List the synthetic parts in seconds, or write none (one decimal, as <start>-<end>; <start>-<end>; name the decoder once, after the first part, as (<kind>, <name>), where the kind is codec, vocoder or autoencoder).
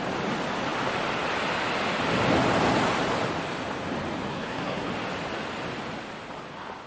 4.3-4.9 (codec, SNAC)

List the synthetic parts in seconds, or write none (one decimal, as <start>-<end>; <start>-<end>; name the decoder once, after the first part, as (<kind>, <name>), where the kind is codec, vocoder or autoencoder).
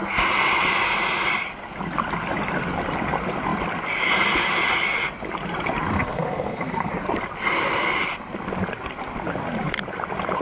5.9-6.9 (codec, SNAC)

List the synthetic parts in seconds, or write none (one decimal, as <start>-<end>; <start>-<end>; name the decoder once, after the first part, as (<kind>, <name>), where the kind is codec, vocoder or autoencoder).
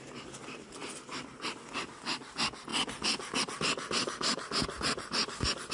none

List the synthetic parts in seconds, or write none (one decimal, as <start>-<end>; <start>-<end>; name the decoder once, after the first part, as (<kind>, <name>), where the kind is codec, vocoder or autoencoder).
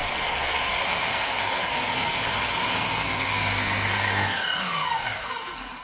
0.0-5.8 (codec, SNAC)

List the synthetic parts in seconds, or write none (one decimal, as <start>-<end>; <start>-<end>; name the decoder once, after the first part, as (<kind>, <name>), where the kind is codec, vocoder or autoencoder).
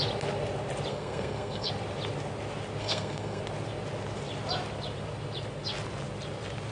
0.9-1.7 (codec, SNAC); 2.8-3.4